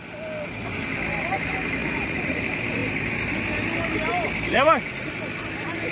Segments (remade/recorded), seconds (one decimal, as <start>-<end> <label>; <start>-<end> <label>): 0.0-1.8 recorded; 1.8-2.4 remade; 2.4-4.5 recorded; 4.5-5.1 remade; 5.1-5.9 recorded